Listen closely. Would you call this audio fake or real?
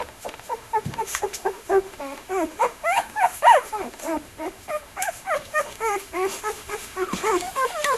fake